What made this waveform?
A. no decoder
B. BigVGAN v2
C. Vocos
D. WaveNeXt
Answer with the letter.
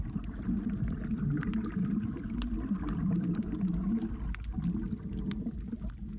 A